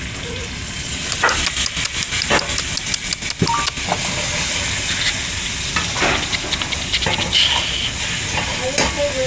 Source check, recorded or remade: recorded